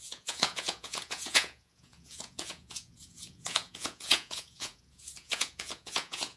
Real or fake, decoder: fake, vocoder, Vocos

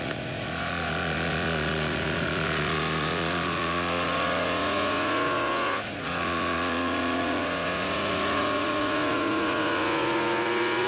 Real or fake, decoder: fake, vocoder, Vocos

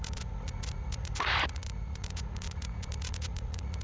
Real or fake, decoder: fake, vocoder, Vocos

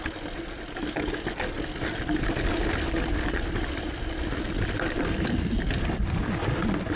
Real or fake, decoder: real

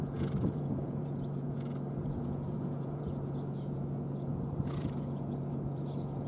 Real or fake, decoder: fake, vocoder, Vocos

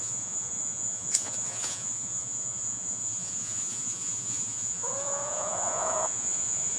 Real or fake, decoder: fake, vocoder, Vocos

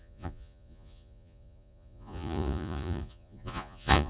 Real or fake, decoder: fake, vocoder, Vocos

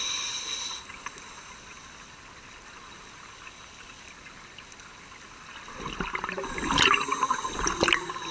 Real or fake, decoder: real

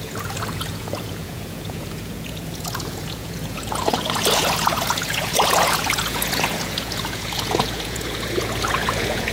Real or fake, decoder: fake, vocoder, Vocos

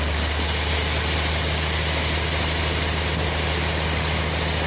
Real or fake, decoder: real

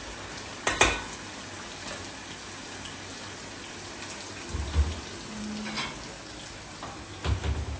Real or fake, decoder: real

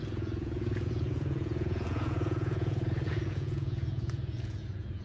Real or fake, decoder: fake, vocoder, Vocos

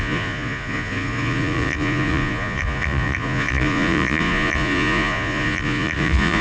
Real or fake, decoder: fake, vocoder, Vocos